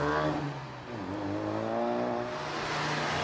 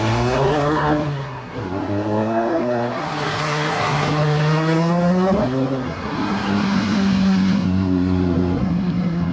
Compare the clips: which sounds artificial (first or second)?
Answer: second